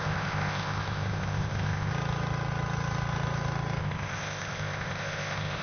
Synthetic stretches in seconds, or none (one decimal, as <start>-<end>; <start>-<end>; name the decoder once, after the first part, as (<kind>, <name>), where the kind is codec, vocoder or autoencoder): 0.0-1.9 (codec, ZipCodec); 3.8-5.6